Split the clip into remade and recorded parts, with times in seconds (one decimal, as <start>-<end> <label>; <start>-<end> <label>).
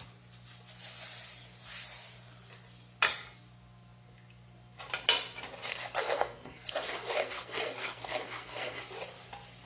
0.0-5.7 recorded; 5.7-8.8 remade; 8.8-9.7 recorded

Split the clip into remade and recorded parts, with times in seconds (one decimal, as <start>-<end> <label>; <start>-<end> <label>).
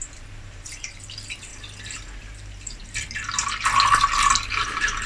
0.0-1.5 remade; 1.5-2.2 recorded; 2.2-2.8 remade; 2.8-4.5 recorded; 4.5-5.1 remade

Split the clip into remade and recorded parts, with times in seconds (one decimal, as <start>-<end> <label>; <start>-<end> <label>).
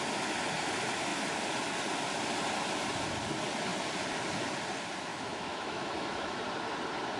0.0-5.1 recorded; 5.1-6.4 remade; 6.4-7.2 recorded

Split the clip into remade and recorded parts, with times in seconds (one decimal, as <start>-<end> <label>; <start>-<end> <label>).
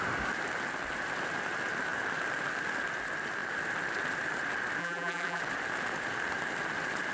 0.0-4.8 recorded; 4.8-5.4 remade; 5.4-7.1 recorded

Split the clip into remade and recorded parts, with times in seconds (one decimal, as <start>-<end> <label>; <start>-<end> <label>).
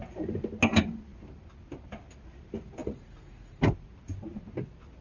0.0-2.8 recorded; 2.8-3.6 remade; 3.6-5.0 recorded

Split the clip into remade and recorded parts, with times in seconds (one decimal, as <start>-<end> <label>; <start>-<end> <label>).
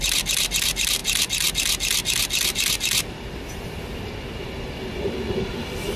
0.0-6.0 recorded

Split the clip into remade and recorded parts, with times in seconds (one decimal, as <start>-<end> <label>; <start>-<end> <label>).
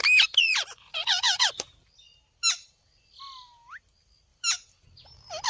0.0-0.4 recorded; 0.4-1.5 remade; 1.5-5.5 recorded